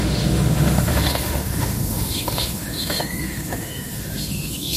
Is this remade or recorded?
remade